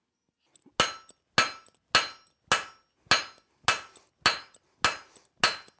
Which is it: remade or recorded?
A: recorded